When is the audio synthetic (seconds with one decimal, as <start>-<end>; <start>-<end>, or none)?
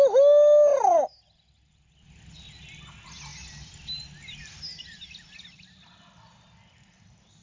0.7-1.9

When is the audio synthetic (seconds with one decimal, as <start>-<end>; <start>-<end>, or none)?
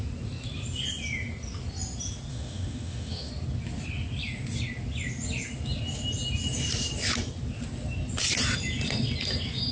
2.3-3.3